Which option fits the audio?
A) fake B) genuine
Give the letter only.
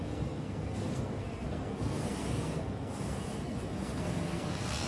A